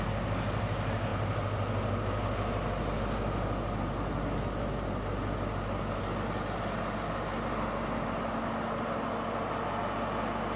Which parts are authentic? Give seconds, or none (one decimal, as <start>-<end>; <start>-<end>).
0.0-10.6